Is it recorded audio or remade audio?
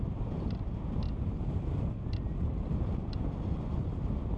recorded